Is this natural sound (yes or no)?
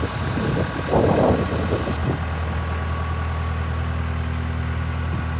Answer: yes